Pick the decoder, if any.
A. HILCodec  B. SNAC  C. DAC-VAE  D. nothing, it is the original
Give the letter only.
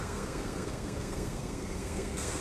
B